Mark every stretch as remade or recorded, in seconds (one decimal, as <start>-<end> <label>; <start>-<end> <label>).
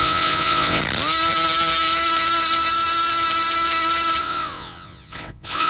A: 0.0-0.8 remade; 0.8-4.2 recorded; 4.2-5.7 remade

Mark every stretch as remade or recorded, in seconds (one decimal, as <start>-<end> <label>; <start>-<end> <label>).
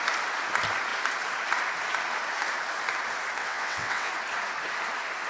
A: 0.0-3.4 recorded; 3.4-4.1 remade; 4.1-5.3 recorded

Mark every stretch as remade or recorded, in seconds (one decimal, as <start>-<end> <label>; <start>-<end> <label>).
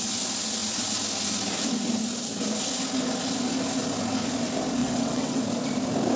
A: 0.0-4.8 recorded; 4.8-5.4 remade; 5.4-6.2 recorded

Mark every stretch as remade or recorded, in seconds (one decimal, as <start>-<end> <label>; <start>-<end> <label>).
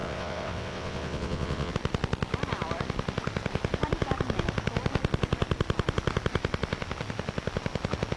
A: 0.0-1.7 remade; 1.7-8.2 recorded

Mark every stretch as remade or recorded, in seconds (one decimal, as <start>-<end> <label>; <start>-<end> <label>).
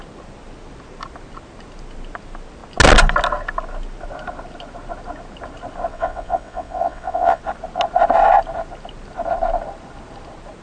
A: 0.0-5.9 recorded; 5.9-7.4 remade; 7.4-10.6 recorded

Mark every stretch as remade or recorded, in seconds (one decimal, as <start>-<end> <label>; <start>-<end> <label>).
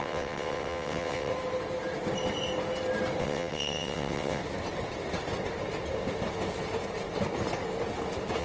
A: 0.0-1.3 remade; 1.3-3.2 recorded; 3.2-4.4 remade; 4.4-8.4 recorded